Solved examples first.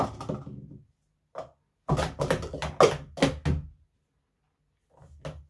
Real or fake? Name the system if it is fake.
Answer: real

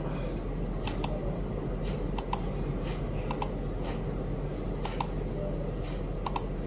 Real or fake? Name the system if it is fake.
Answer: real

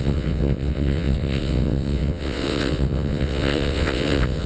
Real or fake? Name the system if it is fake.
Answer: fake, vocoder, WaveNeXt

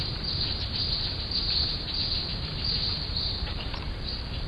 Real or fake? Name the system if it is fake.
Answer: fake, vocoder, BigVGAN v2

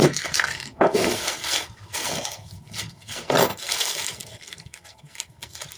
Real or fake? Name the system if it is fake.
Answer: fake, codec, SNAC